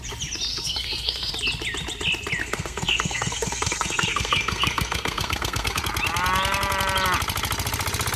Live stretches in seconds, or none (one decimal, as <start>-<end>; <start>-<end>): 0.0-0.5; 1.3-2.4; 5.8-8.2